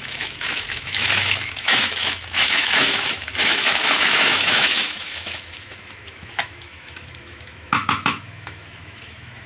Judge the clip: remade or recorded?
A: remade